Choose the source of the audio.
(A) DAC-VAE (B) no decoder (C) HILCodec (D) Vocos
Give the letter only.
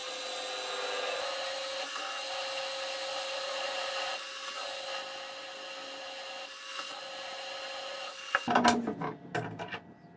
B